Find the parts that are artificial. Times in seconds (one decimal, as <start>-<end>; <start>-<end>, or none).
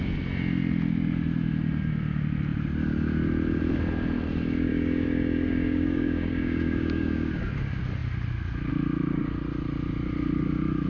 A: 4.7-7.3